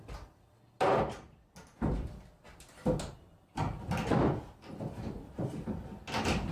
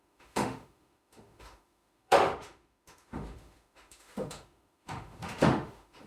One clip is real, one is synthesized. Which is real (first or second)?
first